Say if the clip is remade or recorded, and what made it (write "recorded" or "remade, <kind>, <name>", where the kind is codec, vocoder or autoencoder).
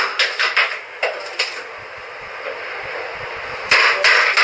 recorded